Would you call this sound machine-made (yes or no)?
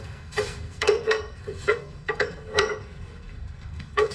yes